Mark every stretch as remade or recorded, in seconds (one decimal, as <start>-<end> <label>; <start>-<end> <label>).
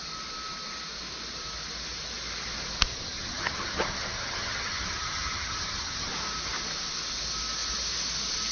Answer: 0.0-2.9 recorded; 2.9-6.1 remade; 6.1-8.5 recorded